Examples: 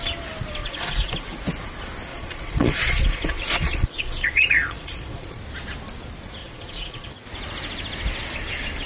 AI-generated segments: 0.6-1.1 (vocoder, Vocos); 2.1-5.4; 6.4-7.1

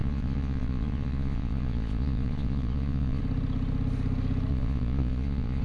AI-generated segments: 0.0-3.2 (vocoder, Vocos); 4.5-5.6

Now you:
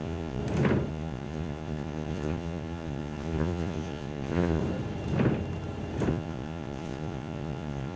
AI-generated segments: 0.0-0.4 (vocoder, Vocos); 0.9-4.6; 6.1-8.0

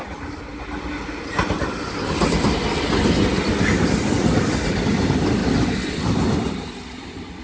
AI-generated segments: none